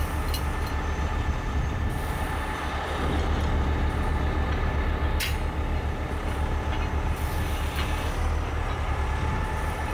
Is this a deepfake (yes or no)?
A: no